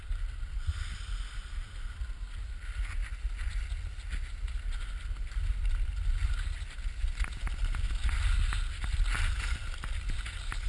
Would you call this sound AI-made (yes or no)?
no